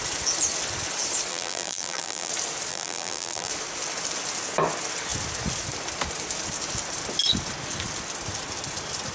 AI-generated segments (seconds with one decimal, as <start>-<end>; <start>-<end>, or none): 1.3-2.3; 2.7-3.5